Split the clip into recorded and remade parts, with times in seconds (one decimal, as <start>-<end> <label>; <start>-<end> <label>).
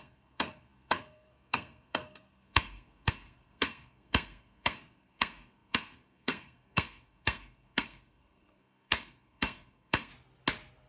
0.0-10.1 remade; 10.1-10.9 recorded